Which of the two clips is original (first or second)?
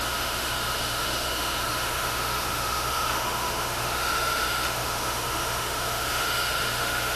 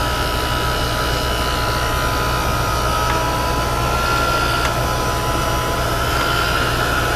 second